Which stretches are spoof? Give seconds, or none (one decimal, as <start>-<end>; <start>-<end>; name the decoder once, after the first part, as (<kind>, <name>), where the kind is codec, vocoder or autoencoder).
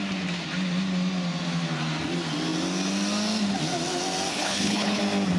4.3-5.0 (codec, HILCodec)